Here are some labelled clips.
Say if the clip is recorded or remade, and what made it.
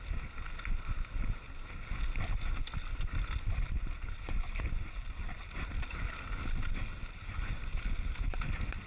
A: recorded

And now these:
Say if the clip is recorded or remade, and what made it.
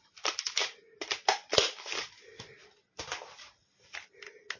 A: remade, vocoder, BigVGAN v2